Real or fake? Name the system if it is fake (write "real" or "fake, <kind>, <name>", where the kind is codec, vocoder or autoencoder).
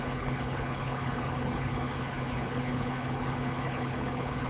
fake, codec, HILCodec